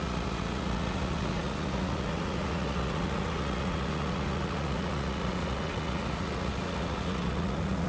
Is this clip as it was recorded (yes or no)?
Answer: no